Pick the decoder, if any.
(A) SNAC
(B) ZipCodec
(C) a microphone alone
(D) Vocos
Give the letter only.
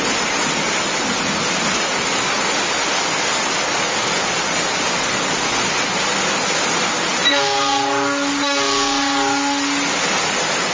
C